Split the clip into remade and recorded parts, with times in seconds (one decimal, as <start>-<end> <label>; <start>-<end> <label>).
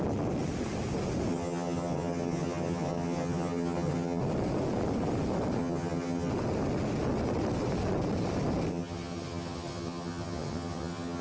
0.0-1.3 recorded; 1.3-4.2 remade; 4.2-5.6 recorded; 5.6-6.3 remade; 6.3-8.7 recorded; 8.7-11.2 remade